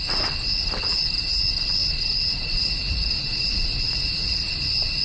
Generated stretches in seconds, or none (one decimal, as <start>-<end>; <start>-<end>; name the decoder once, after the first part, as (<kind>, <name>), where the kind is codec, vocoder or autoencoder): 0.8-1.4 (vocoder, Vocos); 1.8-4.5